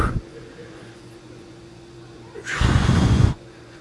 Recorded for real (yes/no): no